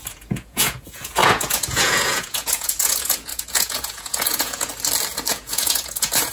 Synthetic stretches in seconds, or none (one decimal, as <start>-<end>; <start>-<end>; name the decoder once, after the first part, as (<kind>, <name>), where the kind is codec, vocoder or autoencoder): 0.0-4.7 (vocoder, Vocos); 5.3-6.3